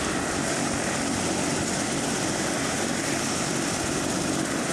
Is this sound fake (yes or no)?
no